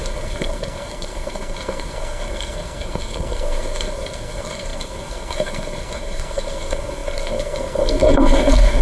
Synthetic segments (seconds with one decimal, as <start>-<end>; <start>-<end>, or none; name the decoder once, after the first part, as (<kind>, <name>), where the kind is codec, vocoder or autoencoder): 0.0-8.8 (codec, SNAC)

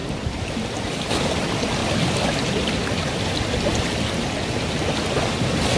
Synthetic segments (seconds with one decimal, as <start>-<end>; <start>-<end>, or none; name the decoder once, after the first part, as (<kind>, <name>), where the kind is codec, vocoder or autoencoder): 0.0-5.8 (vocoder, BigVGAN v2)

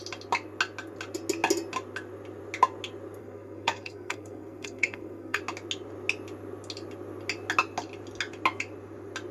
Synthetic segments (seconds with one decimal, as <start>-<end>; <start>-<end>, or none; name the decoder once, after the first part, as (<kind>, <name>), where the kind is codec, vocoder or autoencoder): 3.2-5.4 (codec, SNAC)

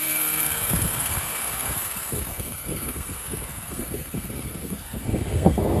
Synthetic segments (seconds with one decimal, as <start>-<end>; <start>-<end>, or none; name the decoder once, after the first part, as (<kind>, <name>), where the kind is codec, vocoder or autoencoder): 0.0-5.8 (codec, SNAC)

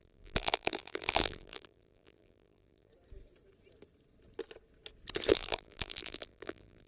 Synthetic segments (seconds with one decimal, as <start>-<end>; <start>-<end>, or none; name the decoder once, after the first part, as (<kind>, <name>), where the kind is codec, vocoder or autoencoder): 0.0-2.9 (vocoder, BigVGAN v2); 5.3-6.9

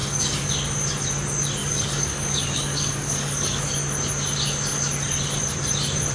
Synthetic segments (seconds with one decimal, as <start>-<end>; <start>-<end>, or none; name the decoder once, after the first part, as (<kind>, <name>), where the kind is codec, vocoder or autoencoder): 0.0-0.5 (codec, DAC); 1.6-3.7

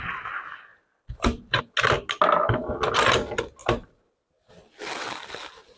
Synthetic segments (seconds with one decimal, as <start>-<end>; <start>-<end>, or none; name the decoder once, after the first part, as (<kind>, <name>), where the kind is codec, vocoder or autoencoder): 0.7-1.6 (vocoder, BigVGAN v2)